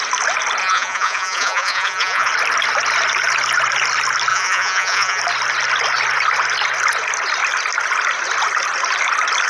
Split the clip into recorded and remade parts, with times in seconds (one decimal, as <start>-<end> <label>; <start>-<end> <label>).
0.0-0.6 recorded; 0.6-2.3 remade; 2.3-4.3 recorded; 4.3-5.2 remade; 5.2-9.5 recorded

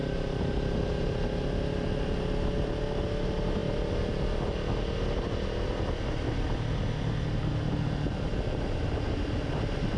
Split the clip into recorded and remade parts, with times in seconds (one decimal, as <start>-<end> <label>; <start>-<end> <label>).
0.0-10.0 recorded

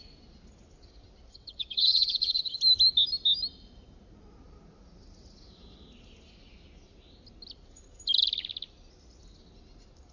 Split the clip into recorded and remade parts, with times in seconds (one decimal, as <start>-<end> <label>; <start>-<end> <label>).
0.0-1.3 recorded; 1.3-2.6 remade; 2.6-10.1 recorded

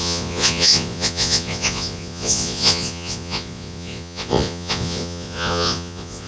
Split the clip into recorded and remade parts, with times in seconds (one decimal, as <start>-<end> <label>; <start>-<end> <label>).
0.0-6.3 remade

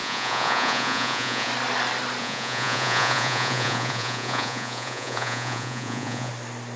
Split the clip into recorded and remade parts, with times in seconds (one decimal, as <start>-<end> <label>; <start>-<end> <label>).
0.0-1.5 remade; 1.5-2.2 recorded; 2.2-6.3 remade; 6.3-6.8 recorded